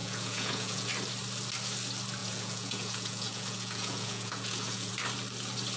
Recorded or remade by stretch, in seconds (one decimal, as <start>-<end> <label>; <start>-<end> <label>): 0.0-0.9 remade; 0.9-2.2 recorded; 2.2-4.9 remade; 4.9-5.8 recorded